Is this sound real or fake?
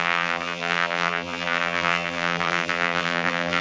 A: fake